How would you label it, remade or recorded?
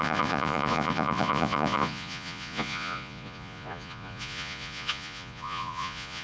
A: remade